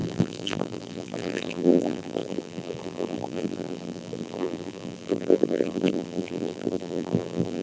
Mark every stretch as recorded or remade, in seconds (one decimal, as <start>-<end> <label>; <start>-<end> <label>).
0.0-7.6 remade